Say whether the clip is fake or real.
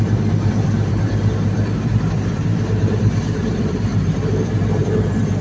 fake